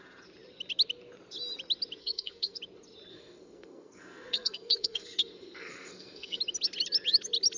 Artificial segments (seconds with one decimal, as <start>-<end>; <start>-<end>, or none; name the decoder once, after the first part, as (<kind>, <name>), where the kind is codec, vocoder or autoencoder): 2.0-2.6 (codec, SNAC); 3.1-6.4

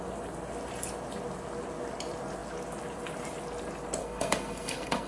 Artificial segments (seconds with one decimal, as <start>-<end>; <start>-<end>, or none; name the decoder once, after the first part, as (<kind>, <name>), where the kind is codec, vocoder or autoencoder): 4.0-5.1 (codec, SNAC)

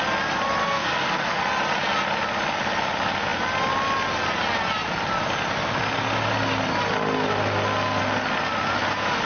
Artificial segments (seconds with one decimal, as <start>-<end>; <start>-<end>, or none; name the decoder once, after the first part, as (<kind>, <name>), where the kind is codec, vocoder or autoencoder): 0.6-1.4 (codec, SNAC)

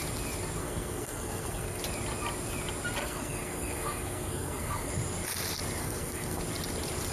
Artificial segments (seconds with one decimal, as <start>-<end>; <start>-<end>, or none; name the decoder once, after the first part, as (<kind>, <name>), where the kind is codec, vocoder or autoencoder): 0.6-1.8 (codec, SNAC); 3.0-4.9; 5.8-6.4

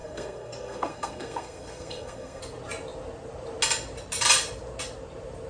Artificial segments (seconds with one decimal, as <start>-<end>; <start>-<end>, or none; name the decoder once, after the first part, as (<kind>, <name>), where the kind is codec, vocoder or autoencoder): 0.0-2.4 (codec, SNAC)

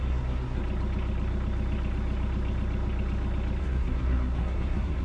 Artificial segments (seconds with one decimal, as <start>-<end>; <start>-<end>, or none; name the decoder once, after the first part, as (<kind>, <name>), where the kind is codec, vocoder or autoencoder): 0.0-0.6 (codec, SNAC); 3.6-5.0

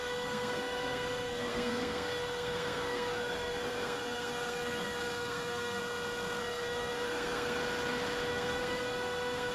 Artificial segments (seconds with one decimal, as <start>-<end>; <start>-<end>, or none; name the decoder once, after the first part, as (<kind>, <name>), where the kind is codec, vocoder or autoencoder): 0.0-5.8 (codec, SNAC); 6.4-7.6; 8.3-9.5